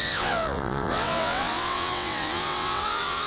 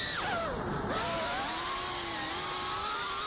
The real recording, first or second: second